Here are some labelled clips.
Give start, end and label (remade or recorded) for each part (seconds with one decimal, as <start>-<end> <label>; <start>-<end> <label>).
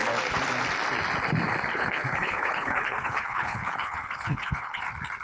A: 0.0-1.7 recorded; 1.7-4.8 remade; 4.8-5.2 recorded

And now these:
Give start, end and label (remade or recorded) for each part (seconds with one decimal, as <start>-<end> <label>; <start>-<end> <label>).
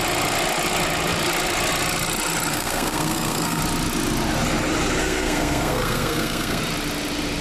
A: 0.0-2.5 recorded; 2.5-3.6 remade; 3.6-5.0 recorded; 5.0-6.6 remade; 6.6-7.4 recorded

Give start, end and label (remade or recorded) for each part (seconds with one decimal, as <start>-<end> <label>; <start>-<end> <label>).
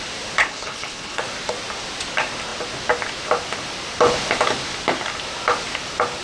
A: 0.0-0.4 recorded; 0.4-1.2 remade; 1.2-6.2 recorded